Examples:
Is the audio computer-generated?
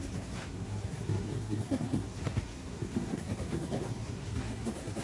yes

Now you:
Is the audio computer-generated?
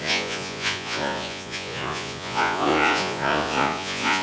yes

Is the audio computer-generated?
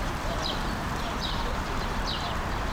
yes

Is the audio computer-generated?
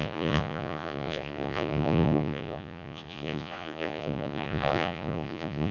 yes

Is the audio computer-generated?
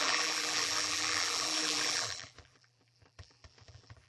yes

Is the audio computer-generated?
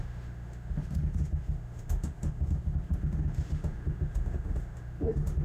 yes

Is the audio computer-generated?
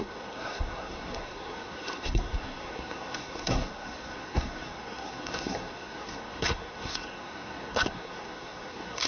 yes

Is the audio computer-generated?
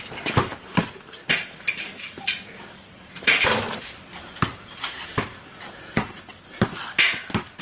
no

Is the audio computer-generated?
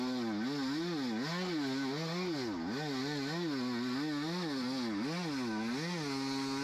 no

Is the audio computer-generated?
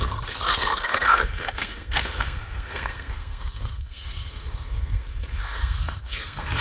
yes